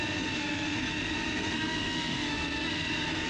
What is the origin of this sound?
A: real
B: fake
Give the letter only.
B